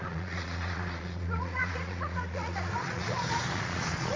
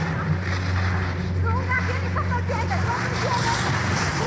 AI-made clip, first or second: first